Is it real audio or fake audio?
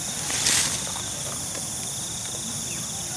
real